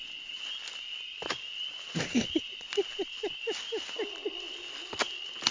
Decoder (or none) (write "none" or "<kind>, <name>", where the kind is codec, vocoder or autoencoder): none